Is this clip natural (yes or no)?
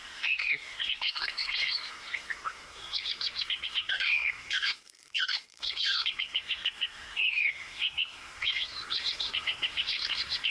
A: no